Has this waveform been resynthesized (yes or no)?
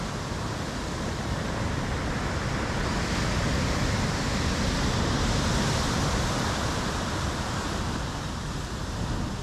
no